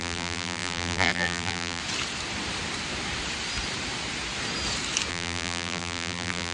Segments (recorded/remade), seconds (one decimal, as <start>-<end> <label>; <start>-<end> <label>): 0.0-1.8 remade; 1.8-5.1 recorded; 5.1-6.5 remade

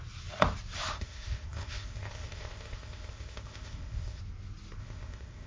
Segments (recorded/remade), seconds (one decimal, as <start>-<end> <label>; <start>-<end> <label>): 0.0-0.9 recorded; 0.9-4.2 remade; 4.2-4.8 recorded; 4.8-5.5 remade

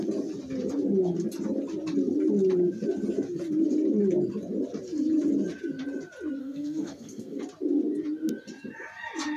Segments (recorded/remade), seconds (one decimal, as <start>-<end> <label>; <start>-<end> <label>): 0.0-6.4 recorded; 6.4-7.4 remade; 7.4-9.4 recorded

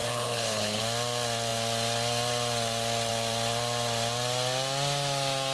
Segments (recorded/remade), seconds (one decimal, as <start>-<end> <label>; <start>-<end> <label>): 0.0-0.8 remade; 0.8-5.5 recorded

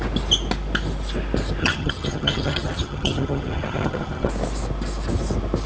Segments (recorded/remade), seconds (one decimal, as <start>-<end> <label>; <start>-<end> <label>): 0.0-1.6 recorded; 1.6-4.3 remade; 4.3-5.7 recorded